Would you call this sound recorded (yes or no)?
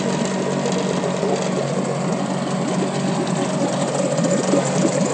yes